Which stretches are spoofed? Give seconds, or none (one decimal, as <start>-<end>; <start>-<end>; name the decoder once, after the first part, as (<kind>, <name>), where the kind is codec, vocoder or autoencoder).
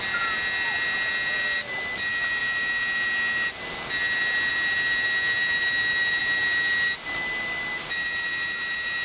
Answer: none